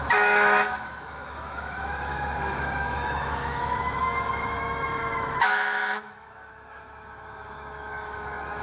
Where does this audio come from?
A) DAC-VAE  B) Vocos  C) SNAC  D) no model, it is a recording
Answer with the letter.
A